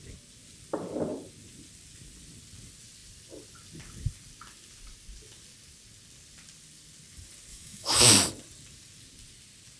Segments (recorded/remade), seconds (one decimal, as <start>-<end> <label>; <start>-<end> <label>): 0.0-7.5 recorded; 7.5-8.1 remade; 8.1-9.8 recorded